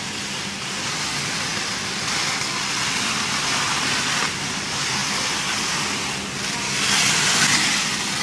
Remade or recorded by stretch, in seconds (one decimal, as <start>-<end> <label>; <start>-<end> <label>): 0.0-8.2 recorded